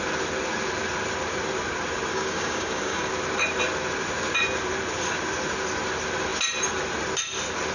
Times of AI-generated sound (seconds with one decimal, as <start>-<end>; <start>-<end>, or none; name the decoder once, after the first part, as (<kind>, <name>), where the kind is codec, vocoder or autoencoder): 2.1-3.1 (codec, DAC)